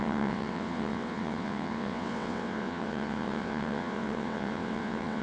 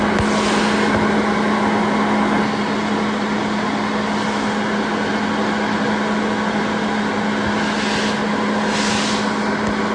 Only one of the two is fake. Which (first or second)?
first